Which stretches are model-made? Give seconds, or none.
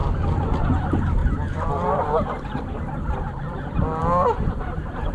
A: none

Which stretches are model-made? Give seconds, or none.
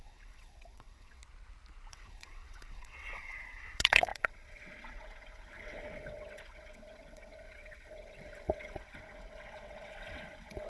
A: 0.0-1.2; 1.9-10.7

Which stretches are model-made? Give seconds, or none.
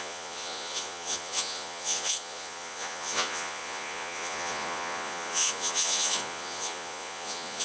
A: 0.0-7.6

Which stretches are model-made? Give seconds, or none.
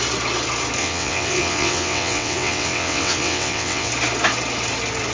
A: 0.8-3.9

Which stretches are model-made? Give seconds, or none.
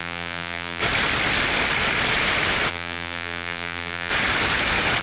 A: 0.0-0.8; 2.7-4.1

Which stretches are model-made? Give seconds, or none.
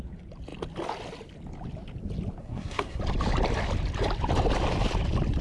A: 2.4-3.0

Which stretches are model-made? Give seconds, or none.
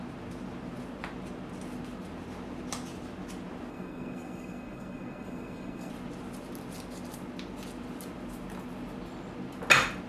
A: 3.7-5.9